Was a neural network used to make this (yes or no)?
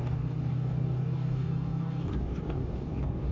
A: yes